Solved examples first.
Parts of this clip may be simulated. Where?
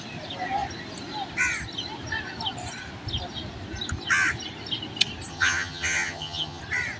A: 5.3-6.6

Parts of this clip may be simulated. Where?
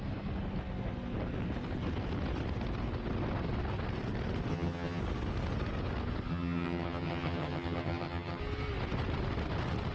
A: 4.5-5.0; 6.3-8.4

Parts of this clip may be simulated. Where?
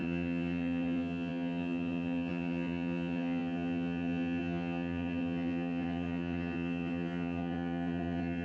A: 0.0-8.4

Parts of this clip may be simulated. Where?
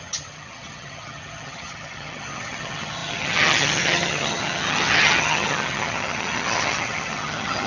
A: 0.0-7.7